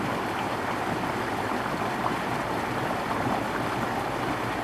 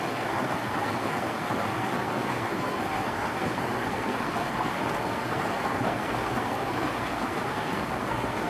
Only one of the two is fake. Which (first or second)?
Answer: second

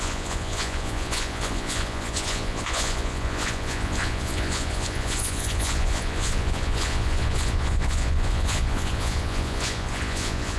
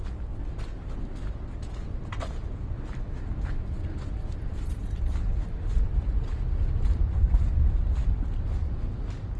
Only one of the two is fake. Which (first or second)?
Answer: first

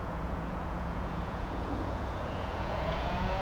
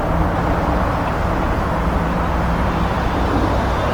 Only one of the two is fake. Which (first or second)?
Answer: first